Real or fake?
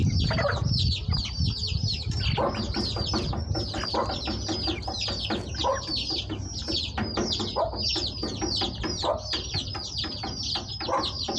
real